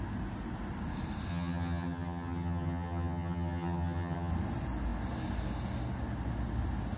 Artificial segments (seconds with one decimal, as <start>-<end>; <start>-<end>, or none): 1.3-4.3